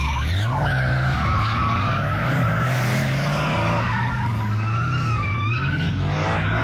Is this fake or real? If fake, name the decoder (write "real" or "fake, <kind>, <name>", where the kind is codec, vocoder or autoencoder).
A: fake, codec, DAC